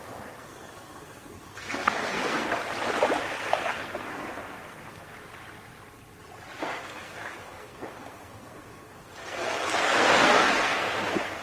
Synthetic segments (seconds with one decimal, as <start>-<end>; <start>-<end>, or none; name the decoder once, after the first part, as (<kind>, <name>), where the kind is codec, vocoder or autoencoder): 0.0-2.6 (codec, SNAC); 3.2-5.1; 6.6-11.4